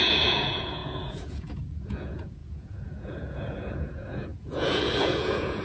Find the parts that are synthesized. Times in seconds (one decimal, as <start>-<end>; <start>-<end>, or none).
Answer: 0.0-5.6